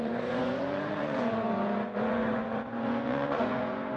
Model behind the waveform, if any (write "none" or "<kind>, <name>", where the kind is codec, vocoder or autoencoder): vocoder, Vocos